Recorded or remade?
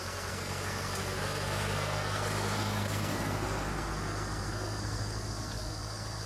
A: remade